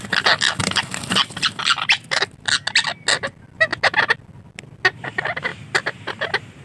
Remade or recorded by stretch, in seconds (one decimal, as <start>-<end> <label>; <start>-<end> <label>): 0.0-0.6 recorded; 0.6-2.2 remade; 2.2-5.5 recorded; 5.5-6.6 remade